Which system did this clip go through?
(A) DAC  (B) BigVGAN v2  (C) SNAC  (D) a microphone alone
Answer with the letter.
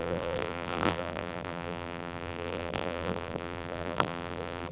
B